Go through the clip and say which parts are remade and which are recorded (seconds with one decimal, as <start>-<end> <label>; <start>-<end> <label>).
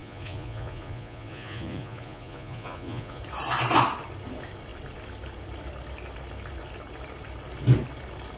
0.0-3.2 remade; 3.2-8.4 recorded